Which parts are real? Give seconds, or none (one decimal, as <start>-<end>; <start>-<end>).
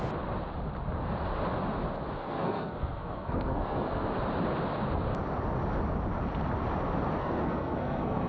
0.0-2.2; 4.1-7.2